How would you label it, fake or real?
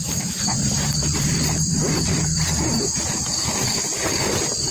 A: fake